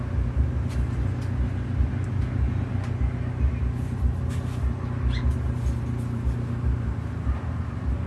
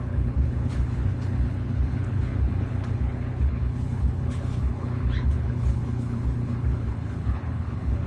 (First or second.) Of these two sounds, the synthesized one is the second